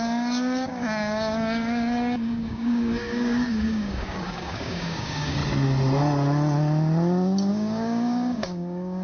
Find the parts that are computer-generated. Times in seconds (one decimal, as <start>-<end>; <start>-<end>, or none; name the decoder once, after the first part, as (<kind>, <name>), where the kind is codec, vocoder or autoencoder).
0.0-5.4 (codec, DAC); 7.5-9.0